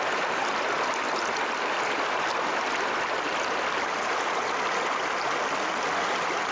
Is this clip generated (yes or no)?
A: no